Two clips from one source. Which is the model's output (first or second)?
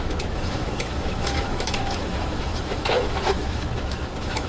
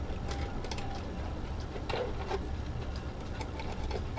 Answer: first